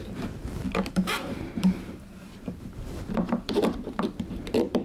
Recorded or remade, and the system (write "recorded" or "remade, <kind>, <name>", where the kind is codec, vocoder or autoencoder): remade, vocoder, BigVGAN v2